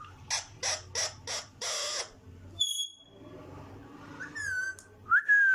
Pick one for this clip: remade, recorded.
recorded